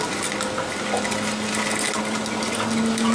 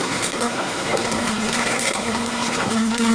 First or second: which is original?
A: first